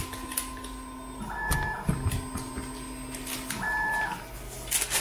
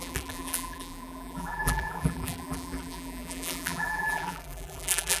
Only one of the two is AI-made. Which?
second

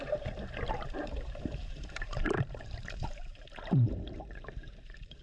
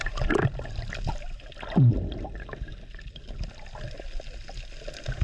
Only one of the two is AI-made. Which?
first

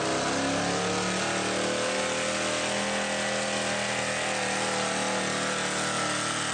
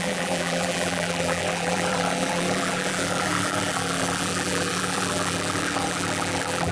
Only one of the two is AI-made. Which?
second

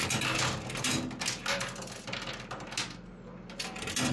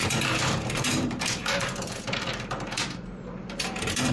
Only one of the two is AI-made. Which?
second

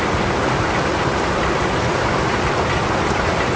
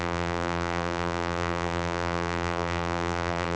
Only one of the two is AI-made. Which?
second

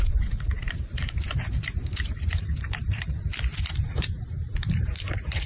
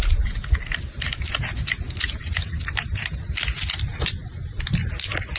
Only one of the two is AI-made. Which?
first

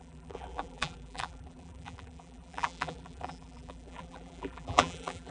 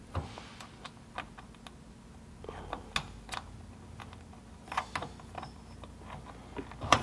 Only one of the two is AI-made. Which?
first